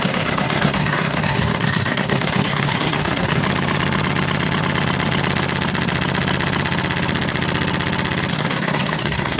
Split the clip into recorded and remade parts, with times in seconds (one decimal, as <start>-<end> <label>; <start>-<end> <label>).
0.0-3.4 remade; 3.4-8.3 recorded; 8.3-9.4 remade